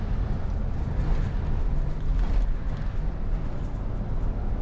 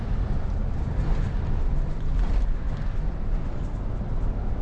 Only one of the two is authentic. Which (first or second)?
first